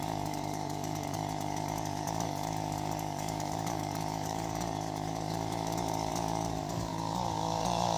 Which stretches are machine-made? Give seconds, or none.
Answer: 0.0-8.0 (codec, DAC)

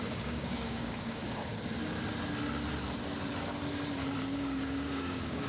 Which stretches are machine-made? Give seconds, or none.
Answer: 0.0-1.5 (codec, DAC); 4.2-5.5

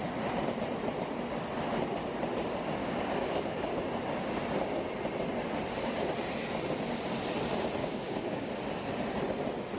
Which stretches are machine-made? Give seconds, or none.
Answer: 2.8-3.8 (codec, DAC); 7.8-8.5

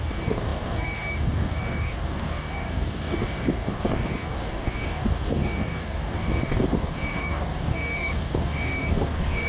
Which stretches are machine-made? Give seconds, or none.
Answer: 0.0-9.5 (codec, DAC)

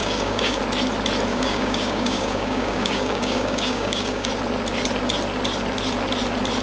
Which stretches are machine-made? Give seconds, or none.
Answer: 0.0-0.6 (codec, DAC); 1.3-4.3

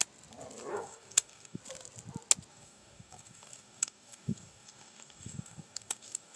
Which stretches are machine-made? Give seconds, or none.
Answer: 0.7-1.6 (codec, DAC); 2.5-6.4

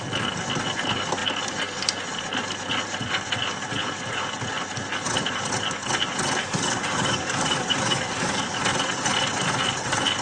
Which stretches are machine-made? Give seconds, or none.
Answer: 6.4-8.6 (codec, DAC)

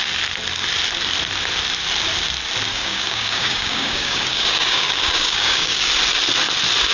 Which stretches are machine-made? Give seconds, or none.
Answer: 2.7-5.9 (codec, DAC)